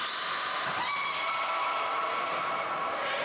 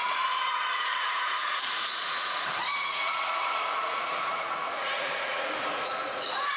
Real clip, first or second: first